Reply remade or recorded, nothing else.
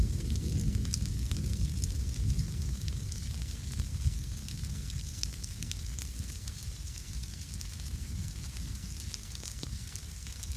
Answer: remade